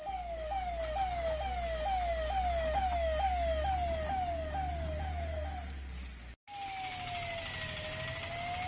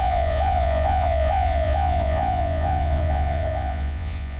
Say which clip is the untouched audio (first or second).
first